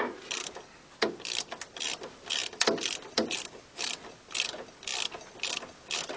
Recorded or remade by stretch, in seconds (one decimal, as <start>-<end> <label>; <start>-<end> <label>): 0.0-6.2 recorded